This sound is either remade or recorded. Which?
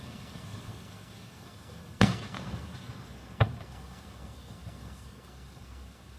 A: remade